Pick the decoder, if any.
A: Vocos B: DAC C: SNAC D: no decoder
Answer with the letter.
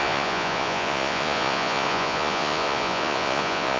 A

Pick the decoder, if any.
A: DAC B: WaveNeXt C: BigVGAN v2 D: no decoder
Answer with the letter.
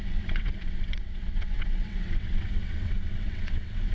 B